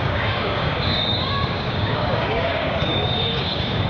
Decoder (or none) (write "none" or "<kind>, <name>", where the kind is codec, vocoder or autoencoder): codec, DAC